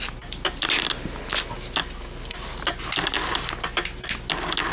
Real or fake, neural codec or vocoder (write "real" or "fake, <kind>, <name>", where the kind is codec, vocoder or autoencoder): real